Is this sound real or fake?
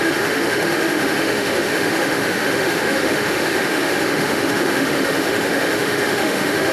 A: fake